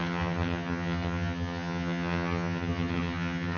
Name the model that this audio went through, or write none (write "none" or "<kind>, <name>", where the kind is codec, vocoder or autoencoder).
vocoder, HiFi-GAN